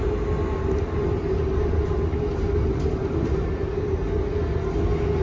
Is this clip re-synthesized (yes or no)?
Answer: no